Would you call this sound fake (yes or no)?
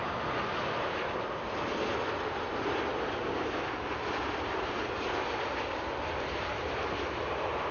no